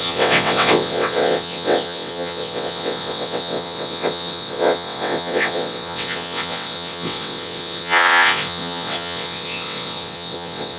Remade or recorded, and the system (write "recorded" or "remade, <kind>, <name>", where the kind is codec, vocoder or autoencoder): remade, vocoder, WaveNeXt